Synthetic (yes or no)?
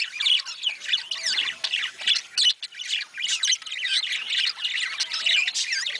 no